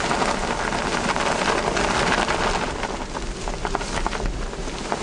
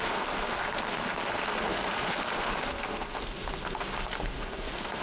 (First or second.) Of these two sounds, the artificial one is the second